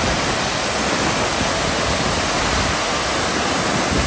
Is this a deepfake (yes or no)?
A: no